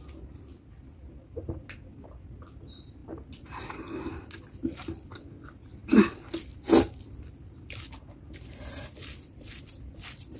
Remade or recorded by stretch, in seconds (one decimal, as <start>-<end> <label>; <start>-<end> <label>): 0.0-10.4 recorded